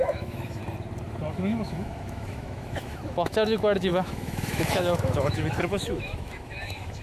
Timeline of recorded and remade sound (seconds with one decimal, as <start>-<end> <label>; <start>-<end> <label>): 0.0-0.6 remade; 0.6-1.3 recorded; 1.3-7.0 remade

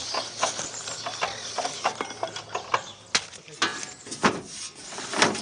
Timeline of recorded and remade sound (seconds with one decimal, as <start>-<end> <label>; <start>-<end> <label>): 0.0-5.4 recorded

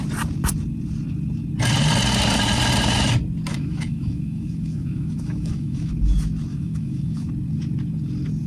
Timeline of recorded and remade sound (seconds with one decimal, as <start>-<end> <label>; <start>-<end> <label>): 0.0-3.5 recorded; 3.5-5.9 remade; 5.9-6.5 recorded; 6.5-7.3 remade; 7.3-8.5 recorded